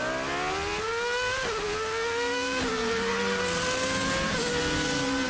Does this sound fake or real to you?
real